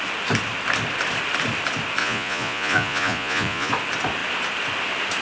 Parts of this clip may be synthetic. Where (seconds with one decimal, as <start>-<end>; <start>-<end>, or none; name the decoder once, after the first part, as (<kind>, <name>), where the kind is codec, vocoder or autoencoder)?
2.0-3.7 (vocoder, Vocos)